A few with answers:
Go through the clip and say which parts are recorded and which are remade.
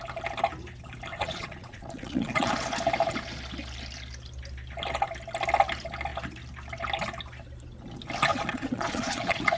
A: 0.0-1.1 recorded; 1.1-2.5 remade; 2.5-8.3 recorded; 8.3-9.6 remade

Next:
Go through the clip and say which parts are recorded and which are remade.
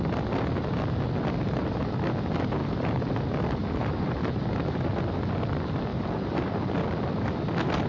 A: 0.0-2.6 recorded; 2.6-3.2 remade; 3.2-3.6 recorded; 3.6-4.9 remade; 4.9-5.9 recorded; 5.9-6.5 remade; 6.5-7.9 recorded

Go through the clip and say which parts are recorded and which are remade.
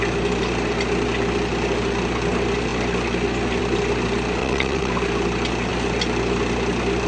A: 0.0-4.4 recorded; 4.4-4.9 remade; 4.9-7.1 recorded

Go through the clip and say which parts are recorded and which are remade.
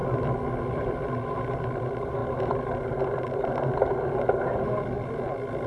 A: 0.0-5.7 recorded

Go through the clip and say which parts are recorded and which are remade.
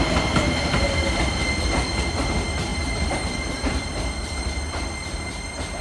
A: 0.0-1.4 remade; 1.4-2.1 recorded; 2.1-5.8 remade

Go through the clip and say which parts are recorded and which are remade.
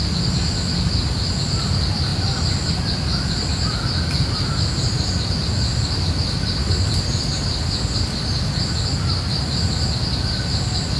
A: 0.0-11.0 recorded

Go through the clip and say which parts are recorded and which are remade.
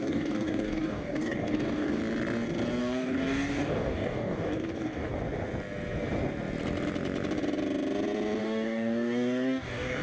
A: 0.0-2.0 remade; 2.0-2.8 recorded; 2.8-5.1 remade; 5.1-8.4 recorded; 8.4-10.0 remade